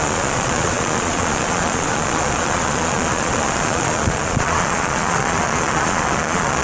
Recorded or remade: remade